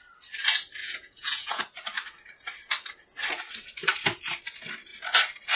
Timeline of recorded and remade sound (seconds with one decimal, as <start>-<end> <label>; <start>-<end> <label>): 0.0-0.8 recorded; 0.8-1.6 remade; 1.6-5.6 recorded